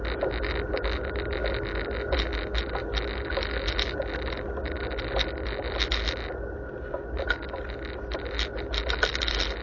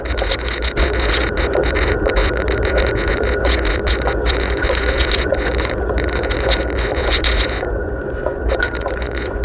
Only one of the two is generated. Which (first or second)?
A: second